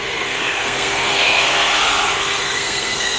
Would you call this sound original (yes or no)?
no